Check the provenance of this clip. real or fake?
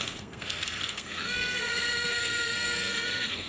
fake